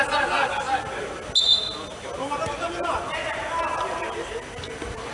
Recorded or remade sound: recorded